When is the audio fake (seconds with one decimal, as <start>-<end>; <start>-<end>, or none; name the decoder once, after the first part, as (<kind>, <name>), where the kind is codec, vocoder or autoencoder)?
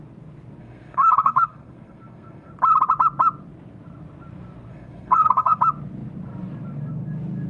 0.6-2.5 (codec, SNAC); 4.7-5.6